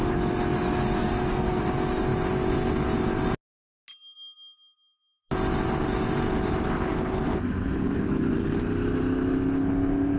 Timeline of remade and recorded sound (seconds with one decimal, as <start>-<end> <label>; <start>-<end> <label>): 0.0-1.0 recorded; 1.0-1.6 remade; 1.6-7.8 recorded; 7.8-8.6 remade; 8.6-10.2 recorded